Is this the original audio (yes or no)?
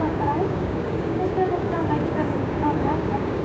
no